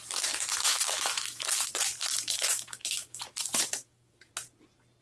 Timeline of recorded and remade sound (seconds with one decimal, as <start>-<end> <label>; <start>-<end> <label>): 0.0-0.5 recorded; 0.5-1.7 remade; 1.7-2.1 recorded; 2.1-4.3 remade; 4.3-5.0 recorded